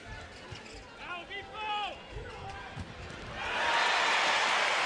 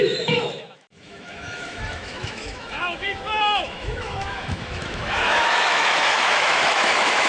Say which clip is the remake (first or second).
second